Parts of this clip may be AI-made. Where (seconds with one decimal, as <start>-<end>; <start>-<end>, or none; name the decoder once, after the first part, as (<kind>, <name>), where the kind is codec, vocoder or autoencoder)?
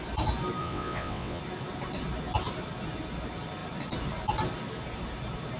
0.6-1.4 (vocoder, WaveNeXt)